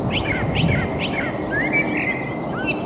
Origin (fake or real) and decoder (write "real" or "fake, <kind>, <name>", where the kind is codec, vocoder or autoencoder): real